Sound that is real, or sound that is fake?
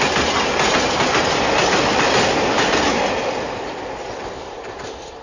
real